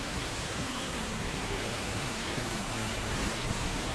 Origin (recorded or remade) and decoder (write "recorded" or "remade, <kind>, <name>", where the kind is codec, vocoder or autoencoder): remade, codec, SNAC